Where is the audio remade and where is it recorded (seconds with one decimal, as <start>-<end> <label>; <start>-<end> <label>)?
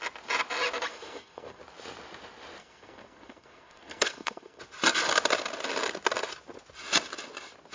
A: 0.0-0.9 recorded; 0.9-1.6 remade; 1.6-2.6 recorded; 2.6-4.6 remade; 4.6-7.7 recorded